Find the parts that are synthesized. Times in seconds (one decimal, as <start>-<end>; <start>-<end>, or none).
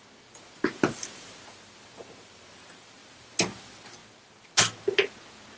none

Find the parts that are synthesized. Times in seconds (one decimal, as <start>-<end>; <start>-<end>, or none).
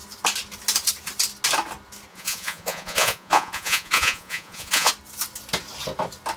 2.1-4.9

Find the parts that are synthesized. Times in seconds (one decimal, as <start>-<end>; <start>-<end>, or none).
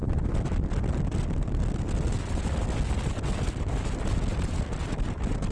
none